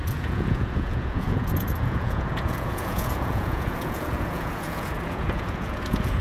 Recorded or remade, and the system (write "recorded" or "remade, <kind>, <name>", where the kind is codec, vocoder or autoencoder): remade, vocoder, Vocos